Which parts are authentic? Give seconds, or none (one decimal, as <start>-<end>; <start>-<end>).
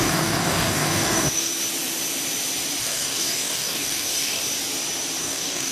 1.5-2.8; 4.4-5.2